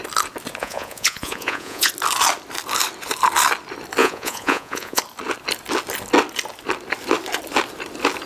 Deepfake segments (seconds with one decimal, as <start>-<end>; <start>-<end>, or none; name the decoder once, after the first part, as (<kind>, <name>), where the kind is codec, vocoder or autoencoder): 0.6-1.9 (vocoder, Vocos); 4.0-5.0